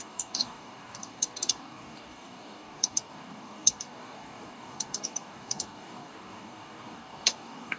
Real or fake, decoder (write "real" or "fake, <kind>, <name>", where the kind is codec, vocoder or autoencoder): fake, codec, DAC